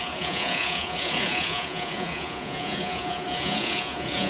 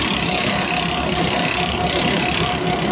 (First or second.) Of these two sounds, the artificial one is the first